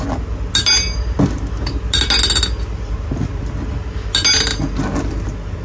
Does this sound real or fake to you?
real